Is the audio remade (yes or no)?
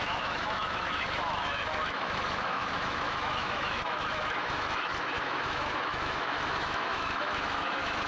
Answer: yes